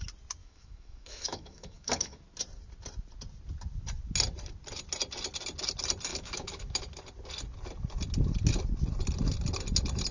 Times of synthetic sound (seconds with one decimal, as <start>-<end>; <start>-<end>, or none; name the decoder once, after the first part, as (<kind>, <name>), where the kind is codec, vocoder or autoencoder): 0.4-2.2 (autoencoder, DAC-VAE); 6.1-6.8